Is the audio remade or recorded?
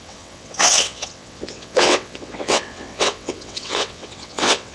remade